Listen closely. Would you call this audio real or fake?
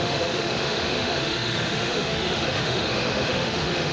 fake